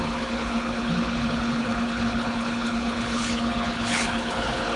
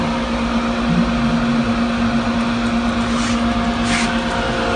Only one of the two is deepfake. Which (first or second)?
first